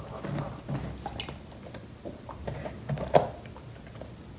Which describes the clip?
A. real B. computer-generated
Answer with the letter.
A